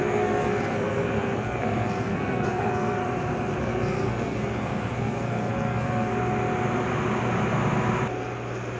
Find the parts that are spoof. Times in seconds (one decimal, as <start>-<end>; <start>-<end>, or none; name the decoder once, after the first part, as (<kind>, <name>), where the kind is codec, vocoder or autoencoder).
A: 0.0-3.0 (codec, SNAC); 3.6-6.1